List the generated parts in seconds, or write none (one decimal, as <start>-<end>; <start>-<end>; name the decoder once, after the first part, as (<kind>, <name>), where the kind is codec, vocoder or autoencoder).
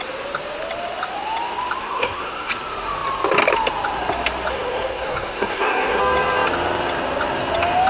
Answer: 1.8-2.5 (codec, SNAC); 4.5-6.0